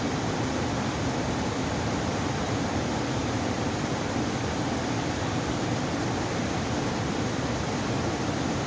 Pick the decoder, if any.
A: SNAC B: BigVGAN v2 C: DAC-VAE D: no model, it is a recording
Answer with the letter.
B